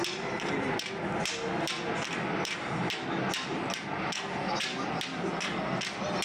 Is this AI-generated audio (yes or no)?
no